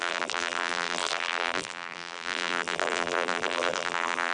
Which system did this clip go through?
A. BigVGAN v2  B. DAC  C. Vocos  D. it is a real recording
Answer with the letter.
A